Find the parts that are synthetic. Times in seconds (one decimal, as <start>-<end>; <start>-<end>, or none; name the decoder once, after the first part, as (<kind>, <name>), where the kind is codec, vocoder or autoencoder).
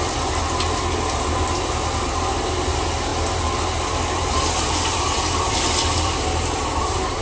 3.1-7.2 (vocoder, BigVGAN v2)